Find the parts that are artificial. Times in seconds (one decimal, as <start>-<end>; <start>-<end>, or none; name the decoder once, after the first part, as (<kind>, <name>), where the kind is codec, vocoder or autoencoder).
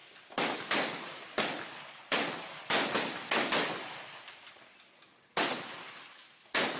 none